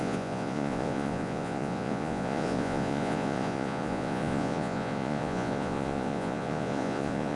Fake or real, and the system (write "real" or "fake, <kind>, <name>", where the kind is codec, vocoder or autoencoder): fake, vocoder, Vocos